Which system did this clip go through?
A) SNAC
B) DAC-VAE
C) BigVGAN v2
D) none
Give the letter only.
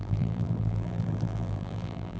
C